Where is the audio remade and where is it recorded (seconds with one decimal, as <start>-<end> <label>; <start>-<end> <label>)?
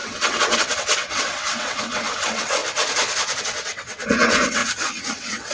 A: 0.0-2.6 remade; 2.6-3.4 recorded; 3.4-4.6 remade; 4.6-5.1 recorded; 5.1-5.5 remade